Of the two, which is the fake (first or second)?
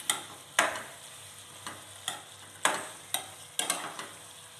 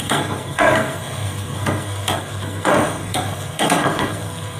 second